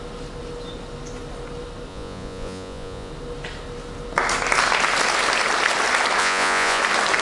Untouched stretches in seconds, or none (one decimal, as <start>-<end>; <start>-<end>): 0.0-1.9; 3.1-6.2; 6.8-7.2